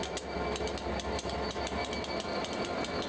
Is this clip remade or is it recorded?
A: recorded